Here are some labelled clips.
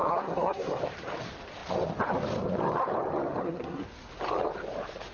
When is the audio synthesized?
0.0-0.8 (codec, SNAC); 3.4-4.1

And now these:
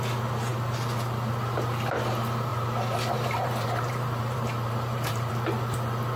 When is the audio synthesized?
2.5-5.3 (vocoder, BigVGAN v2)